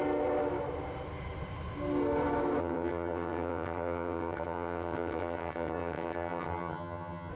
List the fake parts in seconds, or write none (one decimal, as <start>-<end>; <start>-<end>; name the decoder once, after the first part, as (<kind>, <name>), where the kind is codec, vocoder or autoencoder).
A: 2.6-7.3 (vocoder, HiFi-GAN)

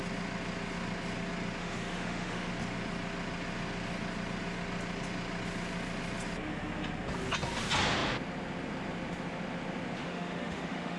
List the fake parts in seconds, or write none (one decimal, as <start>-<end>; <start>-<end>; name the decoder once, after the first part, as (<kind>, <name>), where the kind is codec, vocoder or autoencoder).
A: 1.6-2.5 (autoencoder, DAC-VAE); 10.0-11.0

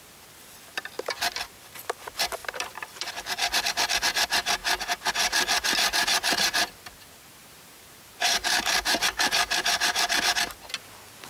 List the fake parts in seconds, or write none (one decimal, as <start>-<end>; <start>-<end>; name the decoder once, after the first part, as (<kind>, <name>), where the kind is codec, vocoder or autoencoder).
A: 2.4-3.1 (vocoder, BigVGAN v2); 7.4-10.1